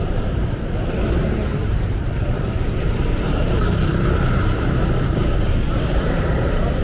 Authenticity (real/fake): fake